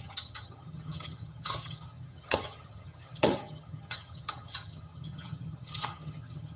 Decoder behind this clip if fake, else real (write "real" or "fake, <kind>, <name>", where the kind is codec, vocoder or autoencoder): fake, vocoder, HiFi-GAN